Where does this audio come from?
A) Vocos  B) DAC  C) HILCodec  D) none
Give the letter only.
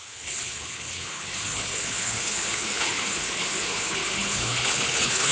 C